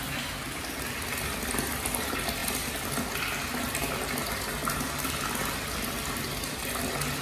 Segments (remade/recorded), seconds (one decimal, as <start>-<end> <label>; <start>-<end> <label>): 0.0-7.2 recorded